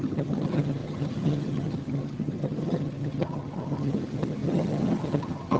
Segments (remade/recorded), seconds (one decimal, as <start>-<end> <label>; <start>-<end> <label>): 0.0-5.6 remade